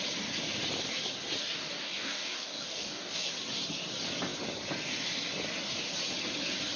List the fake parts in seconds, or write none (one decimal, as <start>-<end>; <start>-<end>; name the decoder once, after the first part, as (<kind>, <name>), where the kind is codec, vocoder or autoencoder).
1.4-3.3 (codec, DAC)